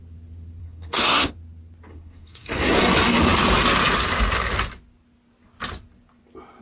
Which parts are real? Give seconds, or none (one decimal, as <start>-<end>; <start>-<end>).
0.0-0.6; 1.3-1.9; 2.8-6.6